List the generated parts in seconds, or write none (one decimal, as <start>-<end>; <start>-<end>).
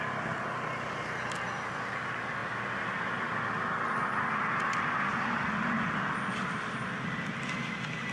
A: none